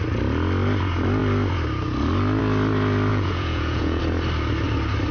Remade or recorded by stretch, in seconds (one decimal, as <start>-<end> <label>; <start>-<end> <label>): 0.0-3.1 recorded; 3.1-4.0 remade; 4.0-5.1 recorded